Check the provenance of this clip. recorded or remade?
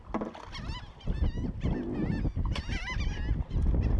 recorded